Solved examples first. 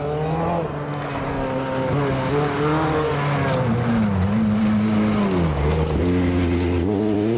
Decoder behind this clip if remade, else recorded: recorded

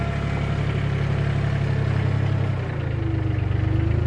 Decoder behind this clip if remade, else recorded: recorded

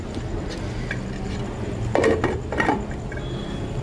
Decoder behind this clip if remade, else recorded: recorded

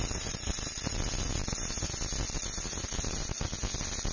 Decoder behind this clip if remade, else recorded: recorded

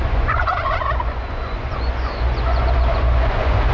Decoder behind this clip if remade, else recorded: remade, vocoder, Vocos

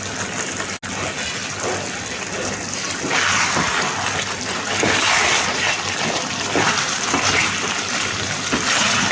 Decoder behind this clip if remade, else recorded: recorded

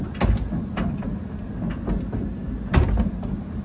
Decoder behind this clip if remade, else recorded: recorded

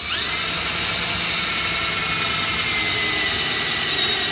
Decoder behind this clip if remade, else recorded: recorded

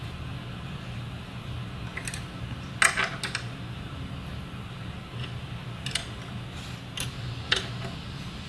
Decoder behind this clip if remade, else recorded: recorded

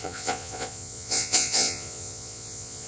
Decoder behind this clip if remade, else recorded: remade, vocoder, Vocos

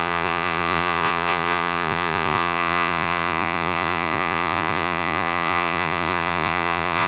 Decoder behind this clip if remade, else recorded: remade, vocoder, Vocos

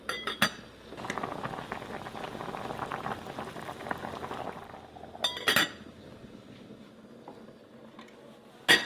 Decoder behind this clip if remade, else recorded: recorded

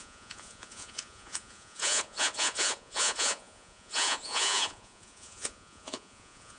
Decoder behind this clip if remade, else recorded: remade, vocoder, Vocos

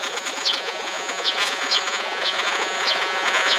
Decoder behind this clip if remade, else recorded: remade, vocoder, Vocos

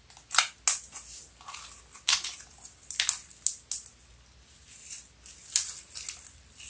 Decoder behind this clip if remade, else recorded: recorded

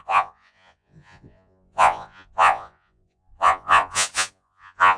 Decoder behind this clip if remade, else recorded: remade, vocoder, Vocos